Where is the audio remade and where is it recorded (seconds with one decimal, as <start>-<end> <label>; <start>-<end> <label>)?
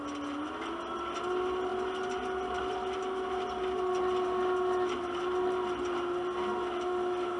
0.0-7.4 recorded